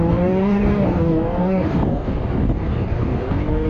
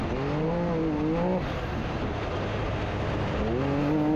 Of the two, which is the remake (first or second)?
first